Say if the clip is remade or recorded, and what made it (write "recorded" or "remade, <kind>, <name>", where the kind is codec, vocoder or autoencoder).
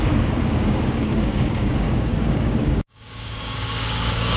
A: remade, codec, DAC